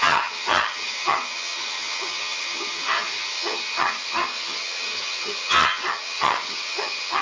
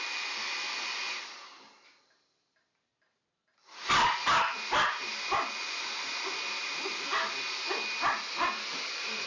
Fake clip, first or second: first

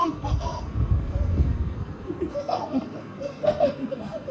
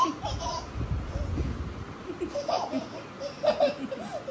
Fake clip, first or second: first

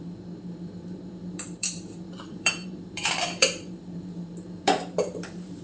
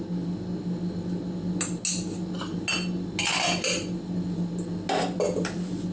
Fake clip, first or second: first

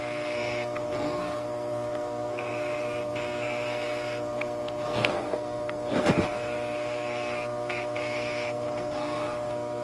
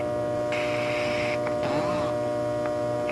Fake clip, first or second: first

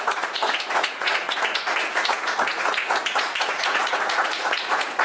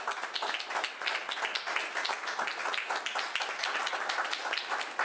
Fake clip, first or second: first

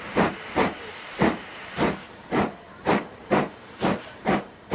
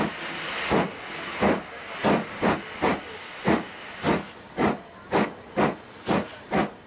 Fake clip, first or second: first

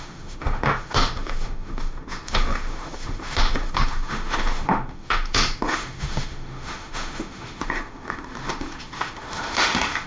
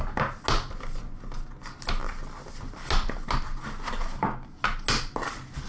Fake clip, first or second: first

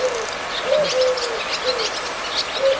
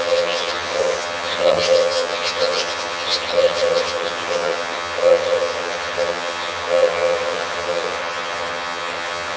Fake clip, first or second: second